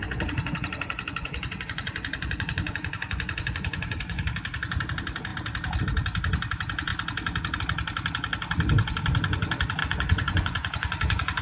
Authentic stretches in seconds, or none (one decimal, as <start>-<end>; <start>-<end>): 4.2-9.8